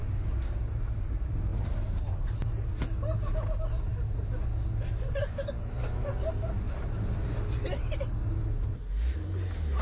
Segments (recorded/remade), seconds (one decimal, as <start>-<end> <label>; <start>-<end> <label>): 0.0-0.7 remade; 0.7-9.8 recorded